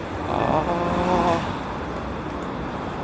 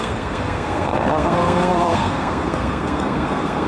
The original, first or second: first